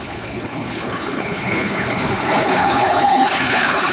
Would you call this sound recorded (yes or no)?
no